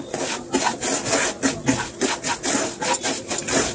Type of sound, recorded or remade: recorded